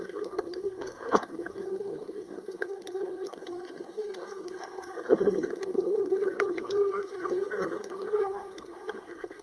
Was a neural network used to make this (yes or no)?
yes